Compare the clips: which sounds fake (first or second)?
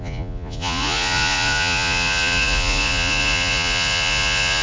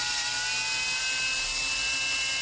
first